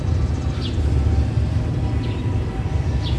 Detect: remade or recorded recorded